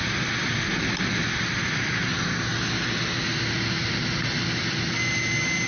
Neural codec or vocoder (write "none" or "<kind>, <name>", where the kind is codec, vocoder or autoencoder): none